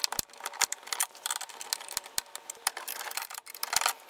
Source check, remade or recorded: recorded